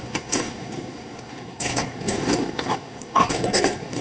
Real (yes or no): no